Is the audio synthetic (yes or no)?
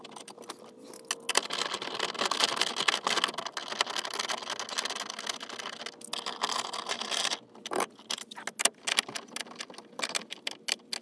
no